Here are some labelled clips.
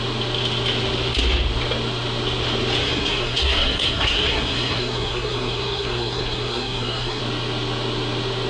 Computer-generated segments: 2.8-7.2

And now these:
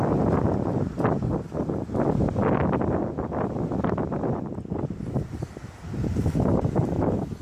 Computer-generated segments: none

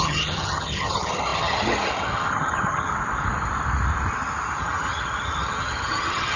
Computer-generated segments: 0.0-2.9; 4.6-6.4